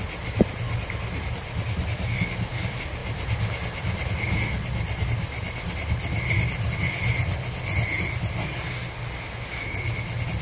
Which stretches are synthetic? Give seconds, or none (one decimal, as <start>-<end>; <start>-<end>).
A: none